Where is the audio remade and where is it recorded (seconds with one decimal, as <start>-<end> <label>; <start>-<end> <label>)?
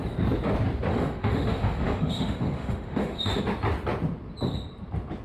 0.0-0.9 recorded; 0.9-3.4 remade; 3.4-5.2 recorded